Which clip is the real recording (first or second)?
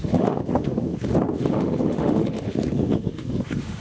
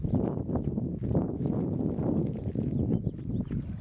second